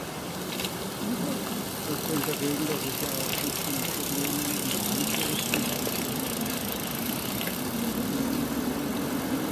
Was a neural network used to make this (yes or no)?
no